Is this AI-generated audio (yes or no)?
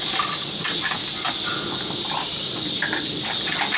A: no